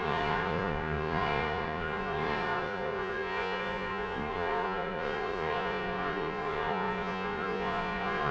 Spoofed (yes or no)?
yes